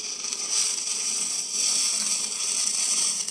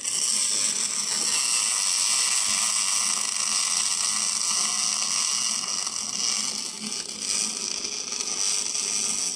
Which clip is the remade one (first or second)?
first